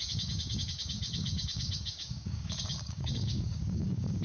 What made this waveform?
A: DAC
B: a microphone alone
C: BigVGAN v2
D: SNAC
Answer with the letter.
A